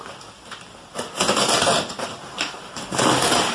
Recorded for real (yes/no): yes